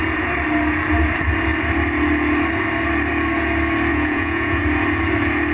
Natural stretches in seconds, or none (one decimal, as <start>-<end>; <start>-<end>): 0.0-3.9; 4.6-5.5